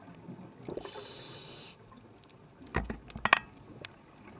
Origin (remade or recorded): recorded